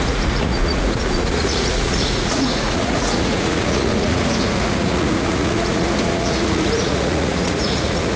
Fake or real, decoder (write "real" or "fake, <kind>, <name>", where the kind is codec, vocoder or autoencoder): fake, vocoder, Vocos